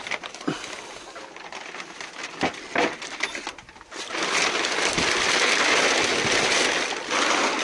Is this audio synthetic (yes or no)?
no